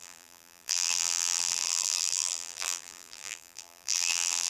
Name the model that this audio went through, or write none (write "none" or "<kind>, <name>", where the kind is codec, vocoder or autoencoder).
vocoder, BigVGAN v2